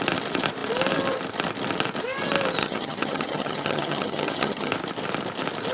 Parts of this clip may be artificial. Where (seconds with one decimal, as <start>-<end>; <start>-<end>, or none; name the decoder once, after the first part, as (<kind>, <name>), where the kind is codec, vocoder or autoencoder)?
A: 2.6-4.7 (vocoder, HiFi-GAN)